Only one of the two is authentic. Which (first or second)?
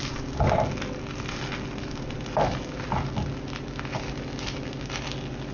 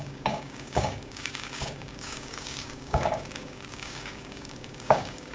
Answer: first